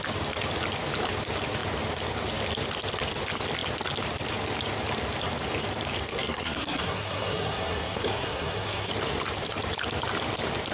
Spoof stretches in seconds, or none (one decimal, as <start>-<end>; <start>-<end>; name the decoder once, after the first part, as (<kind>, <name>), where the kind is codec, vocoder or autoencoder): 6.1-8.9 (codec, SNAC)